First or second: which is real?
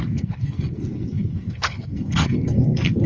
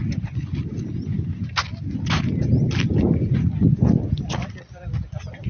second